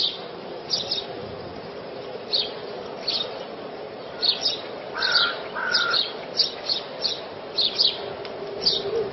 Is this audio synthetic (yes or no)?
no